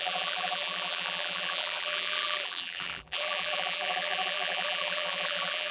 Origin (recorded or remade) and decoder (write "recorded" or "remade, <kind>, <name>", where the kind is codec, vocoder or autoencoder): remade, vocoder, BigVGAN v2